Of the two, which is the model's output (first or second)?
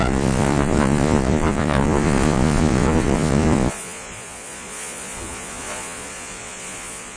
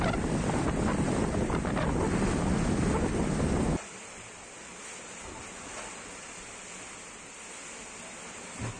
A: first